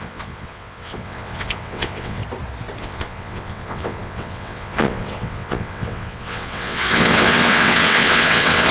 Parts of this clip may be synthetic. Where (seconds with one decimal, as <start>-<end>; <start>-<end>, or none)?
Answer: 0.0-2.2; 2.8-8.7